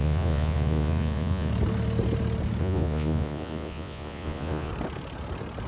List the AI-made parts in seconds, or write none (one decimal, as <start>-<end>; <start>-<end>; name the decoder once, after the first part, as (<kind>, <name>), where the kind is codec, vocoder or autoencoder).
0.0-1.5 (vocoder, Vocos); 2.6-4.7